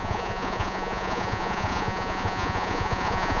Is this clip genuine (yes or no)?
no